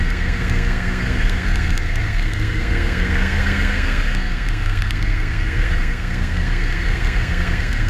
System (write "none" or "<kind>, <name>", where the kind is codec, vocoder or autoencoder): codec, SNAC